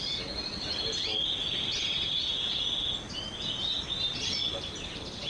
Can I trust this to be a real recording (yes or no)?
yes